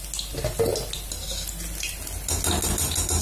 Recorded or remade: recorded